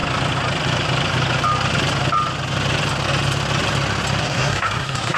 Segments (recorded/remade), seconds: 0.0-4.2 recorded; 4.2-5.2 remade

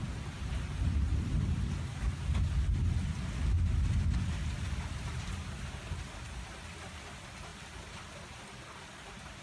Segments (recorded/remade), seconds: 0.0-9.4 recorded

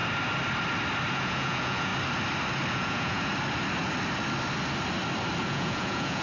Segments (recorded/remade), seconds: 0.0-1.1 recorded; 1.1-1.9 remade; 1.9-2.7 recorded; 2.7-3.3 remade; 3.3-5.4 recorded; 5.4-6.2 remade

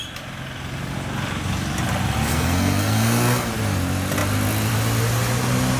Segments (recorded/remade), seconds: 0.0-2.3 recorded; 2.3-3.5 remade; 3.5-5.8 recorded